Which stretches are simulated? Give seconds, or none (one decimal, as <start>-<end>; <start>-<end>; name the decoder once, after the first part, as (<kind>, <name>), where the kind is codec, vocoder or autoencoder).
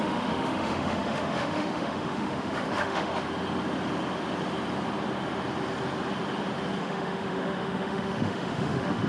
0.0-3.1 (autoencoder, DAC-VAE); 6.8-9.1